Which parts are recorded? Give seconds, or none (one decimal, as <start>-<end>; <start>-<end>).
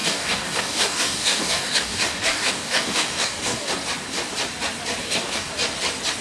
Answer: 3.7-5.0; 5.5-6.2